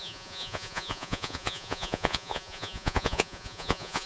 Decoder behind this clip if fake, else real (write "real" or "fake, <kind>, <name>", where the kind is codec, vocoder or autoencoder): fake, vocoder, Vocos